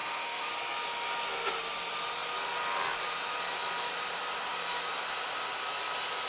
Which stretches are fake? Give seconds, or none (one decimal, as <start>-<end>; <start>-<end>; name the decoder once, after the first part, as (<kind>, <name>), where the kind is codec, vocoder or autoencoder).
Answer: 0.0-0.5 (autoencoder, DAC-VAE)